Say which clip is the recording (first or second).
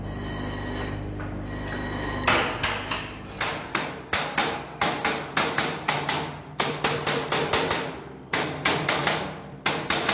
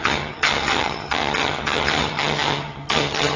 first